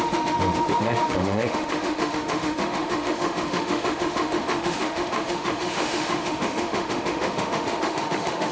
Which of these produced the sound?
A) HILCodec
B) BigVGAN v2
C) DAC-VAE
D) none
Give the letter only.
C